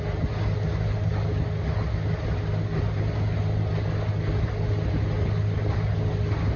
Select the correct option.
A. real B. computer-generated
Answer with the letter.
A